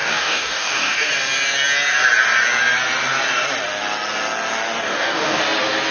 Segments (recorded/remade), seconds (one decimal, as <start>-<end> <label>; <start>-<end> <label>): 0.0-1.1 remade; 1.1-4.8 recorded; 4.8-5.4 remade; 5.4-5.9 recorded